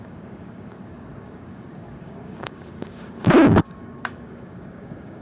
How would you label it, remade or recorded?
remade